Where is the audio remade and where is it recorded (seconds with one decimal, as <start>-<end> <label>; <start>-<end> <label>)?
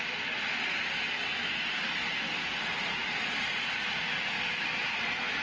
0.0-5.4 recorded